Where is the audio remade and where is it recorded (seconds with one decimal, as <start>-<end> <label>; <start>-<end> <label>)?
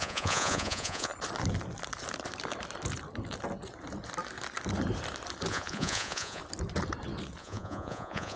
0.0-1.1 remade; 1.1-5.5 recorded; 5.5-6.4 remade; 6.4-7.4 recorded; 7.4-8.4 remade